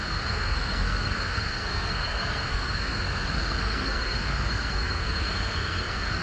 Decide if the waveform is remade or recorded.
remade